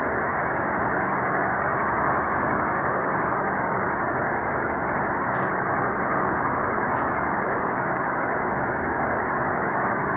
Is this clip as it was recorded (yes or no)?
no